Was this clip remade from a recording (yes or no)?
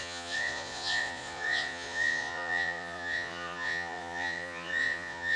yes